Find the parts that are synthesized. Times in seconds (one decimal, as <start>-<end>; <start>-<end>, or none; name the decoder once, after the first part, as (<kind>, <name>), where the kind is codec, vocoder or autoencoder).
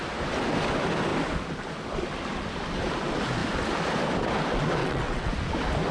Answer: 4.8-5.3 (vocoder, WaveNeXt)